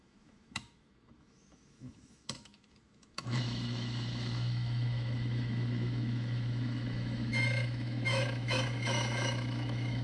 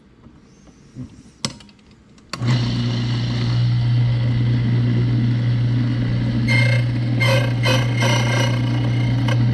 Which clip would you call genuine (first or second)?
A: second